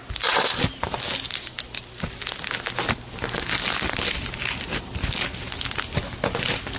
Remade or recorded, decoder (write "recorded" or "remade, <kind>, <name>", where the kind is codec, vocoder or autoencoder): recorded